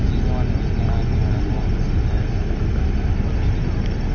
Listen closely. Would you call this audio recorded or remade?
recorded